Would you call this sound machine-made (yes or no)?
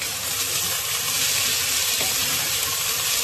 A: yes